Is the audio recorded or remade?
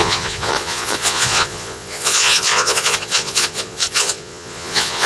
remade